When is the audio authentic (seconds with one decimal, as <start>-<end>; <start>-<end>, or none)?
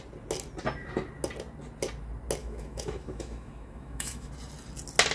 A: 0.0-2.4; 4.3-5.1